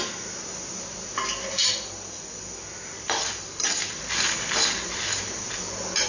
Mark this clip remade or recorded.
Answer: recorded